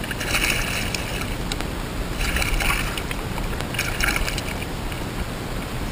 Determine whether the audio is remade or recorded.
recorded